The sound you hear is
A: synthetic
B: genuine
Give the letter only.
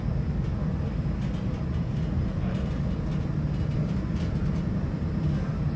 B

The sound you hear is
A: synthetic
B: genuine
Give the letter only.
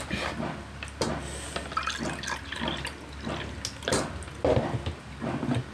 B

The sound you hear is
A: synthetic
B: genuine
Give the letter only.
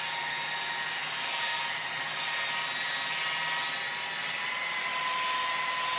B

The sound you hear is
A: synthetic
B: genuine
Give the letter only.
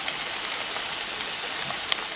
B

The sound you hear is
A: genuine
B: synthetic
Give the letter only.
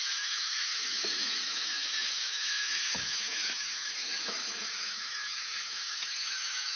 B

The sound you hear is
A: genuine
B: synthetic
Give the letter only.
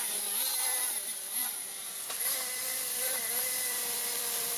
B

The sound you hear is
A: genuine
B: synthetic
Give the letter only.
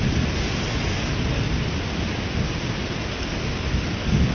A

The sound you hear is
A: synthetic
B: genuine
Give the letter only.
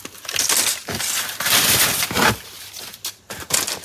B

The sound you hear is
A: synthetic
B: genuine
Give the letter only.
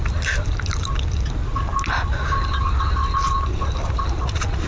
B